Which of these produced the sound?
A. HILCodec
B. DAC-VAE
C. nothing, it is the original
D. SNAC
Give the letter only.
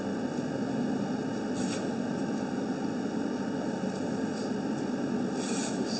C